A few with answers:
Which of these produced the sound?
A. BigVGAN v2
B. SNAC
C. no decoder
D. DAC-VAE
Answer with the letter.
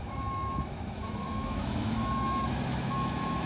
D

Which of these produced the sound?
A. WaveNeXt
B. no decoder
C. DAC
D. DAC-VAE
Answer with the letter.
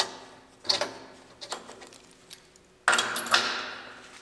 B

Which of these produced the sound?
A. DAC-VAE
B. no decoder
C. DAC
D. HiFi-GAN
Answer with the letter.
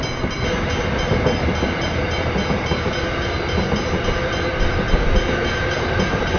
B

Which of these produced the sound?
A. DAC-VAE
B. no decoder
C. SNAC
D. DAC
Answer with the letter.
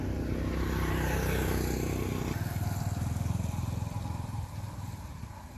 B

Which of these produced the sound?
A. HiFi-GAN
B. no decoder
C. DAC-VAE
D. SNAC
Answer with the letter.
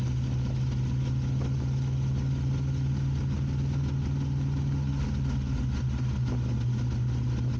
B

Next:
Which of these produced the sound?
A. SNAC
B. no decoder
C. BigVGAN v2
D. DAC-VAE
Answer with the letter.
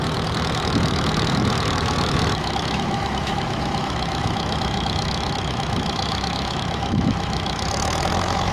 D